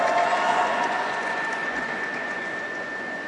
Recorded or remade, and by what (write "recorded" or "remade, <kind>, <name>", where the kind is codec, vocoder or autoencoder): remade, vocoder, Vocos